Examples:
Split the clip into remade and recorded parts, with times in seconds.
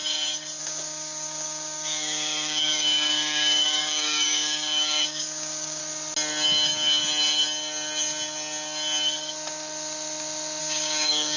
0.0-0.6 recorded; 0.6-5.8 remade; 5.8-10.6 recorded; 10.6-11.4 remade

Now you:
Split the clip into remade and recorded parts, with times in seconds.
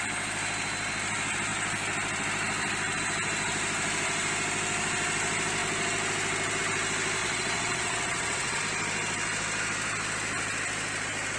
0.0-7.2 recorded; 7.2-8.6 remade; 8.6-11.4 recorded